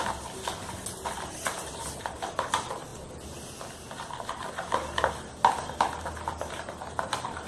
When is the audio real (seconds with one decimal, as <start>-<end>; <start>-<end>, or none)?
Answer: 0.0-7.5